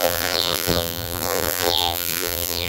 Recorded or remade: remade